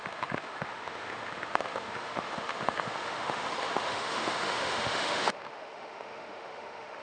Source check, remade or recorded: remade